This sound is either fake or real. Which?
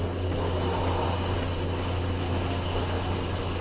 real